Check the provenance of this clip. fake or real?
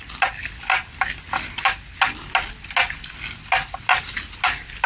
real